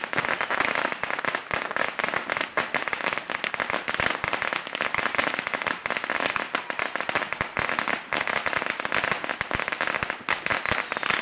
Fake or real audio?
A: real